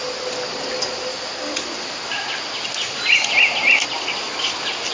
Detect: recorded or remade recorded